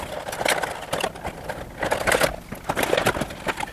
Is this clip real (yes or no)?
yes